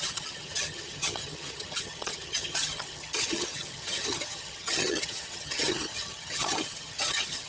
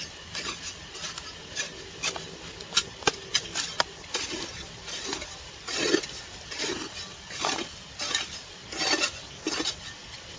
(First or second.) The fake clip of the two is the first